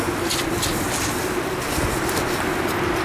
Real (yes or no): yes